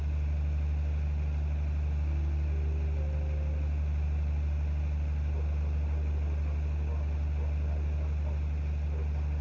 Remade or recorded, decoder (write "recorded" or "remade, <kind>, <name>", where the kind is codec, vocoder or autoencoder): recorded